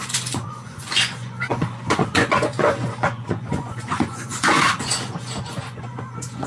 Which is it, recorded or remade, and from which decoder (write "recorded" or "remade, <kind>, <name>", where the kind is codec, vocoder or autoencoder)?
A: remade, vocoder, Vocos